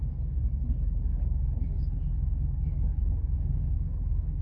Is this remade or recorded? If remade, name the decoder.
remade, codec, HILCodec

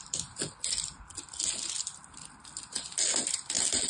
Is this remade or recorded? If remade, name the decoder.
recorded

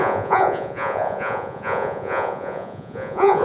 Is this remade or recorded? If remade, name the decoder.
remade, vocoder, Vocos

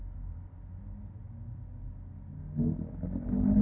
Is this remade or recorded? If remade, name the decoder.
recorded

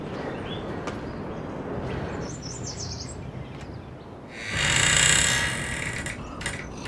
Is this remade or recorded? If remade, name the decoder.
recorded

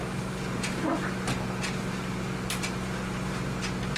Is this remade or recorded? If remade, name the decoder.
recorded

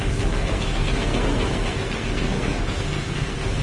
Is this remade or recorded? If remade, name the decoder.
remade, codec, SNAC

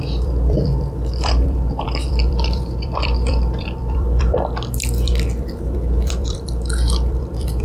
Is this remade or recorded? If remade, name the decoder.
remade, vocoder, BigVGAN v2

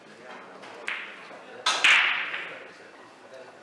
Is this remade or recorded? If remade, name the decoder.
recorded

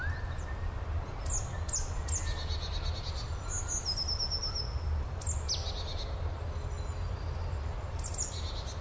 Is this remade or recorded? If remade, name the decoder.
recorded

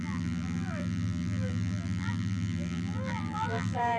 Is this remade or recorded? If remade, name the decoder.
remade, vocoder, BigVGAN v2